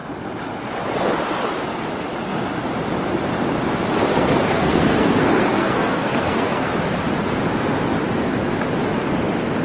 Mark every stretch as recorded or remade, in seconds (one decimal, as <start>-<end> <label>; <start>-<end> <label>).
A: 0.0-4.1 recorded; 4.1-6.7 remade; 6.7-9.6 recorded